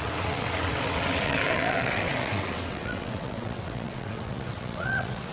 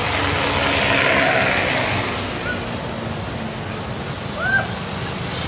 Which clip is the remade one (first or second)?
first